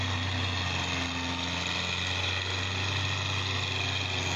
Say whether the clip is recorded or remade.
recorded